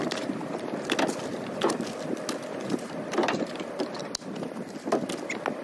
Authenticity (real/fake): real